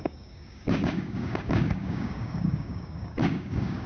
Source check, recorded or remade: remade